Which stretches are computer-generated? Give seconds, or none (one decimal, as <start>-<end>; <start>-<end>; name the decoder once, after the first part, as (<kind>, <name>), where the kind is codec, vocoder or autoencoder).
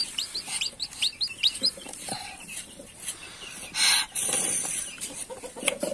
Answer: 0.0-3.2 (vocoder, BigVGAN v2); 4.7-5.9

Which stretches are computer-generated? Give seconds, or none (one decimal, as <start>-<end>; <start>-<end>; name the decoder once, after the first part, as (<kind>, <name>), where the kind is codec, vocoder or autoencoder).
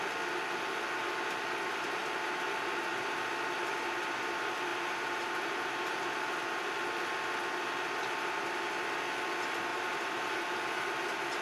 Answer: 4.7-6.3 (vocoder, BigVGAN v2); 9.7-10.6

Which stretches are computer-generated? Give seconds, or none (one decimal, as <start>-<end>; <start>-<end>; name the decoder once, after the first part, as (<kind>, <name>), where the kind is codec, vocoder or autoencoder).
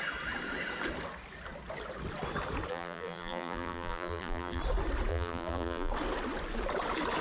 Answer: 2.7-4.6 (vocoder, BigVGAN v2); 5.1-5.9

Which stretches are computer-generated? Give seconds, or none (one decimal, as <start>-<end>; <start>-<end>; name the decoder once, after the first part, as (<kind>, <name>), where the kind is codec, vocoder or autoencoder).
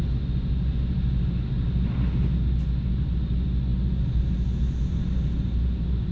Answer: none